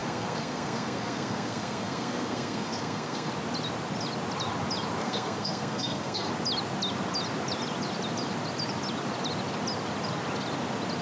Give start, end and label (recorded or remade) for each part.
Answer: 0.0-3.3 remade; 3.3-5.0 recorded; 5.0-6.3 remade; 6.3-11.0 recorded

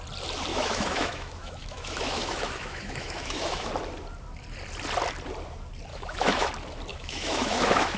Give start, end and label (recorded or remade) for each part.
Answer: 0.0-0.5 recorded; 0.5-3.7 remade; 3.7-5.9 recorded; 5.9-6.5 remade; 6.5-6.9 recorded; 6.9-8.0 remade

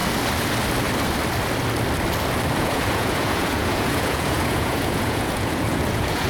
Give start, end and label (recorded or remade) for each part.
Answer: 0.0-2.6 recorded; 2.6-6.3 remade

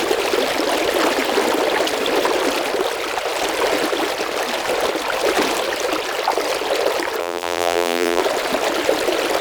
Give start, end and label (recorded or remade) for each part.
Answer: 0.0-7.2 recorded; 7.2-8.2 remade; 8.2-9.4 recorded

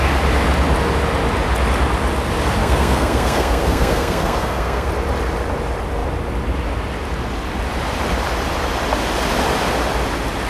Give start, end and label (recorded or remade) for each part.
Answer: 0.0-2.6 recorded; 2.6-4.9 remade; 4.9-10.5 recorded

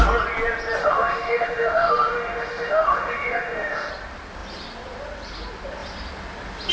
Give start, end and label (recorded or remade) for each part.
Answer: 0.0-0.8 recorded; 0.8-3.9 remade; 3.9-6.7 recorded

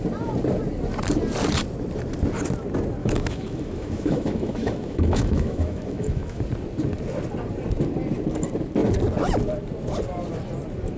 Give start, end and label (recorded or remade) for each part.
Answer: 0.0-3.0 recorded; 3.0-6.4 remade; 6.4-11.0 recorded